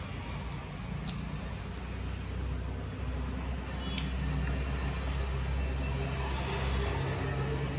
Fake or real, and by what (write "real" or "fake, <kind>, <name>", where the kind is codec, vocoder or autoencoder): real